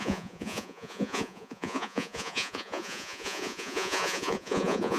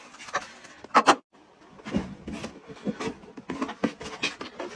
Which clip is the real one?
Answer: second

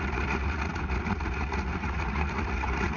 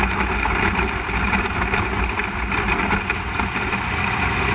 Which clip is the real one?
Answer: second